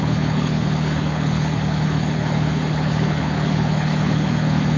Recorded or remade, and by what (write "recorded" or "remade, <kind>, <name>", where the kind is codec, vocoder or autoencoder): remade, codec, HILCodec